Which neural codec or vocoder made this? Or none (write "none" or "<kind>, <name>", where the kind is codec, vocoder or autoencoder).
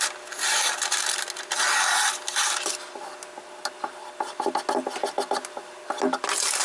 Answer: none